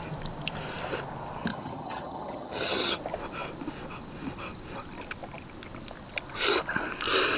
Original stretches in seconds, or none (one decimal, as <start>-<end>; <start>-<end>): 0.0-1.5; 3.0-7.4